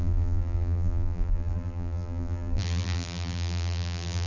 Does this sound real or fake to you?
fake